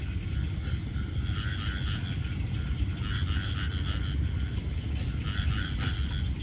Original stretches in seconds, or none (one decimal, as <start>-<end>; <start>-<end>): 0.0-6.4